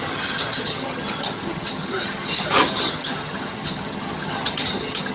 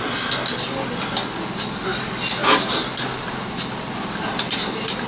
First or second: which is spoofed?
first